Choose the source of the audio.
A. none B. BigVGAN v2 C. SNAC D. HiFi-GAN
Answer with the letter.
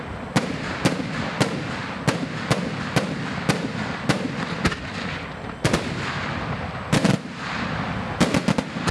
A